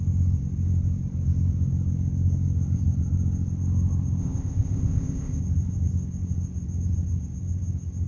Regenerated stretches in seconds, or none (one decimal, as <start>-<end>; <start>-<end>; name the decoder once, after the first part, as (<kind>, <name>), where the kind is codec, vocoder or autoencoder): 4.2-5.4 (codec, ZipCodec)